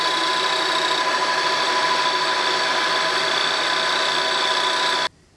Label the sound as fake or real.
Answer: real